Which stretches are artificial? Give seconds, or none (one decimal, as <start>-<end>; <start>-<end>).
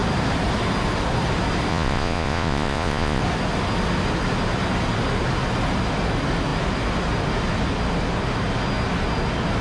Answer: 1.7-3.2